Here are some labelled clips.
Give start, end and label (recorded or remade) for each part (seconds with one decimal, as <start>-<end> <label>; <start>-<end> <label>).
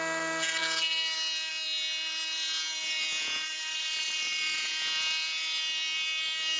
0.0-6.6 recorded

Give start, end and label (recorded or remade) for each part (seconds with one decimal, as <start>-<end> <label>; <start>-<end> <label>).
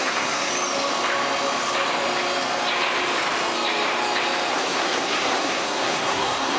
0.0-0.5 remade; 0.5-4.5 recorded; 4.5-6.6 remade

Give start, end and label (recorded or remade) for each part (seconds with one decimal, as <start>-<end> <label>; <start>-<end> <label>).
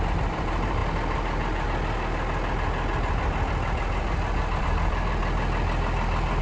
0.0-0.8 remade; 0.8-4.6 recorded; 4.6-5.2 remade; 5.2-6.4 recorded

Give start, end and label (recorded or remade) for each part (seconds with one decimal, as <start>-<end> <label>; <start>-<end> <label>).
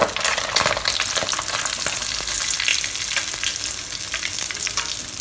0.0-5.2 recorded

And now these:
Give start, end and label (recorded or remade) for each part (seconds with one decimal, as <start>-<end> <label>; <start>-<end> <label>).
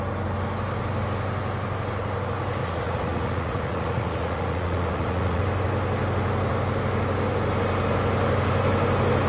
0.0-2.6 recorded; 2.6-5.4 remade; 5.4-9.3 recorded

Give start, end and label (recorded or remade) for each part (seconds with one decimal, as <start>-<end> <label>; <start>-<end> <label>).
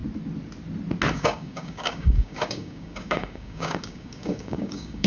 0.0-1.1 recorded; 1.1-5.1 remade